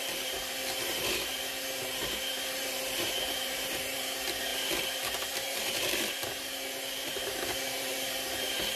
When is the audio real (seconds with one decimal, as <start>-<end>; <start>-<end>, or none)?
none